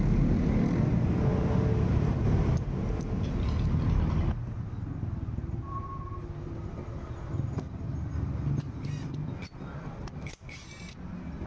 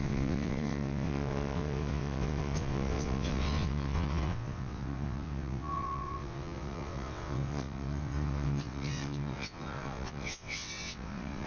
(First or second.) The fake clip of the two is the second